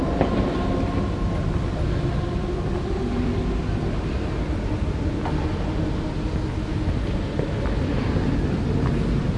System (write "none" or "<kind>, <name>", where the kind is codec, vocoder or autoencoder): none